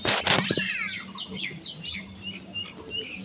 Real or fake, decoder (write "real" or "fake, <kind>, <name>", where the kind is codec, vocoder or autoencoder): real